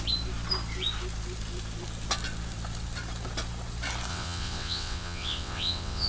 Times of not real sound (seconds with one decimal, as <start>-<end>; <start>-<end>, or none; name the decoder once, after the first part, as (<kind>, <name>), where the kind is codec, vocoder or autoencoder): 4.1-6.1 (vocoder, WaveNeXt)